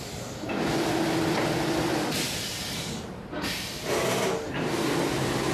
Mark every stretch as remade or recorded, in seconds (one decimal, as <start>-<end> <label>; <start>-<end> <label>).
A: 0.0-1.9 recorded; 1.9-5.1 remade; 5.1-5.5 recorded